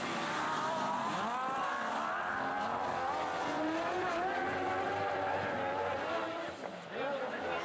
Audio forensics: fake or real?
fake